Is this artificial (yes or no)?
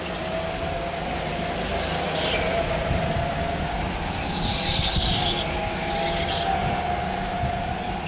no